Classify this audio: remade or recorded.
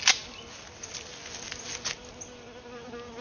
recorded